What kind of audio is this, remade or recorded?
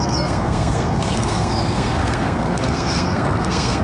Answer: remade